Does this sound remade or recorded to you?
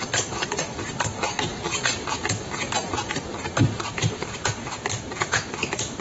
recorded